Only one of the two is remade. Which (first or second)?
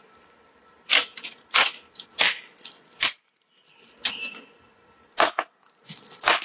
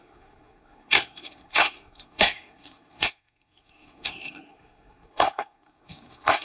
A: second